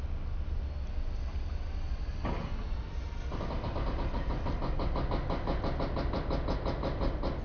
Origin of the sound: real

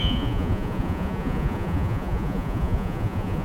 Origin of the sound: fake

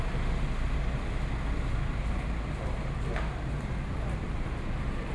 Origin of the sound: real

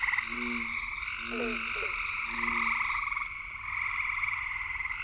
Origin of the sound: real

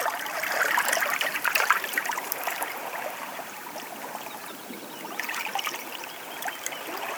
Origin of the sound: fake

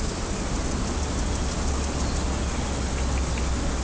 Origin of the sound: real